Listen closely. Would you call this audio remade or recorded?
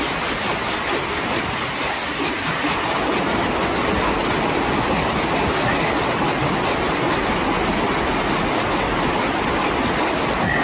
recorded